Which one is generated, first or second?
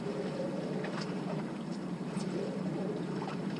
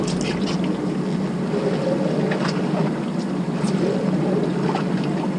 first